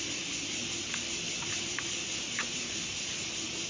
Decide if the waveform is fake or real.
real